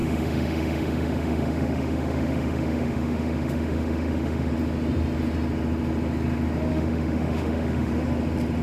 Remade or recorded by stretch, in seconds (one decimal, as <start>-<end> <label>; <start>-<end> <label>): 0.0-4.5 remade; 4.5-6.7 recorded; 6.7-7.9 remade; 7.9-8.6 recorded

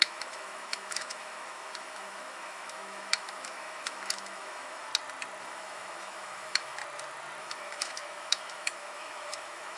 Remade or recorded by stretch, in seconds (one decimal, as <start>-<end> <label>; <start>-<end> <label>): 0.0-4.9 remade; 4.9-5.4 recorded; 5.4-6.8 remade; 6.8-7.4 recorded; 7.4-9.8 remade

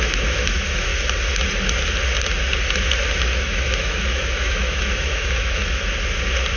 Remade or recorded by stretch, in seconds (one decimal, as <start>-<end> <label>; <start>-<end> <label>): 0.0-0.9 remade; 0.9-3.4 recorded; 3.4-5.6 remade; 5.6-6.6 recorded

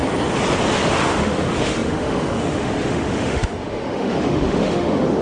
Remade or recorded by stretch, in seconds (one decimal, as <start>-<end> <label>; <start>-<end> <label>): 0.0-0.9 recorded; 0.9-5.2 remade

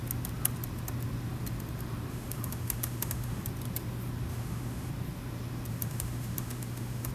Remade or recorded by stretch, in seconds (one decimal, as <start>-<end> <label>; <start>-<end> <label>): 0.0-2.1 recorded; 2.1-3.4 remade; 3.4-4.3 recorded; 4.3-4.9 remade; 4.9-5.7 recorded; 5.7-7.1 remade

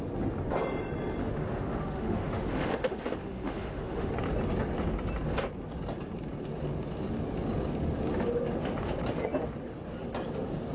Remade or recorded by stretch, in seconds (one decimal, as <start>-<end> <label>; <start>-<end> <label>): 0.0-1.2 recorded; 1.2-4.1 remade; 4.1-10.7 recorded

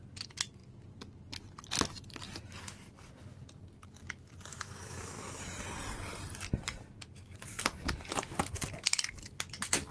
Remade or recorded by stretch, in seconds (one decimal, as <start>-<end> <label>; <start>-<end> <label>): 0.0-4.5 recorded; 4.5-5.2 remade; 5.2-9.9 recorded